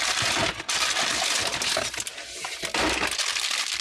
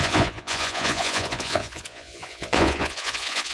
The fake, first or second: second